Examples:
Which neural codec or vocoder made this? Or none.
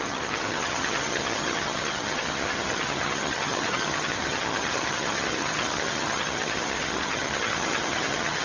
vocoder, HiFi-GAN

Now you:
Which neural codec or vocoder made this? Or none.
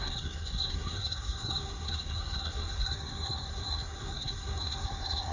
codec, SNAC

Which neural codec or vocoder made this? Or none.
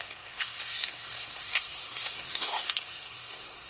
codec, SNAC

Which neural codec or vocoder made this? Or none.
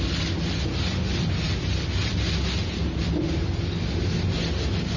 none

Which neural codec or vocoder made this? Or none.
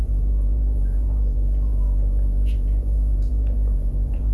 vocoder, BigVGAN v2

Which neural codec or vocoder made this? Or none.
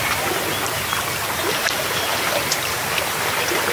none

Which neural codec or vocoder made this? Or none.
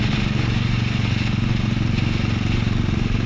none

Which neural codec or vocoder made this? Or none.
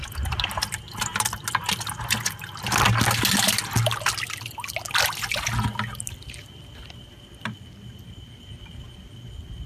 none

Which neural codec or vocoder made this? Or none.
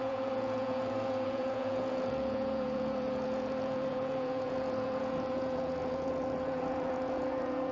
vocoder, Vocos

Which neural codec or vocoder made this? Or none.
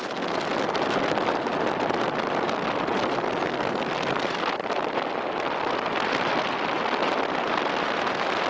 none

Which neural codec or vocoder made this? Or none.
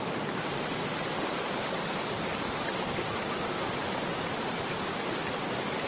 none